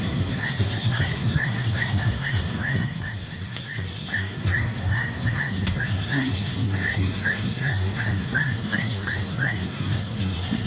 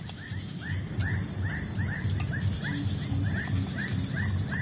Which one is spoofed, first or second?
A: first